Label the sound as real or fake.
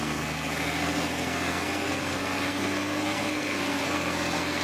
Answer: fake